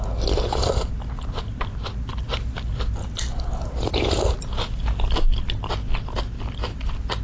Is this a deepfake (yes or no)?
no